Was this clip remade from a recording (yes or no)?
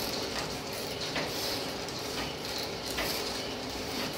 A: yes